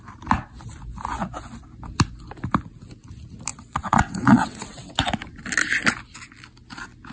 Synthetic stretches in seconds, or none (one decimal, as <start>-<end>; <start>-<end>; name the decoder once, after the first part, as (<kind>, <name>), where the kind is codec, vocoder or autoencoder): 3.5-4.9 (vocoder, WaveNeXt)

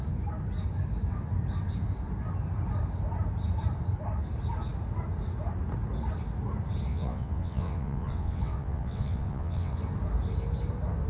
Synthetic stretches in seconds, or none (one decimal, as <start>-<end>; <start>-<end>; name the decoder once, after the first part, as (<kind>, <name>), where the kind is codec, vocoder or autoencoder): 6.9-9.8 (vocoder, WaveNeXt)

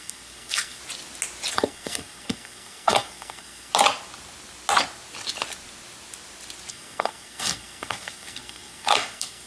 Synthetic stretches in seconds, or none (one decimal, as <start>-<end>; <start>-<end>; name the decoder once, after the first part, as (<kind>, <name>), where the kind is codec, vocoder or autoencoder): 0.0-0.8 (codec, SNAC); 1.5-3.7; 6.7-9.5

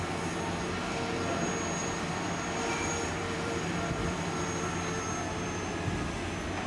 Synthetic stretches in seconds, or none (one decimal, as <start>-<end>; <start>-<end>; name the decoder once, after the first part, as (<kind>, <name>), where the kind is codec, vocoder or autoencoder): 1.8-5.7 (vocoder, BigVGAN v2)

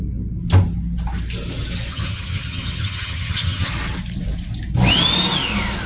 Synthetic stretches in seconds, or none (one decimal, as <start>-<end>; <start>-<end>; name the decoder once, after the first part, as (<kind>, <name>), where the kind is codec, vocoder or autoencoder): 1.9-3.7 (vocoder, HiFi-GAN)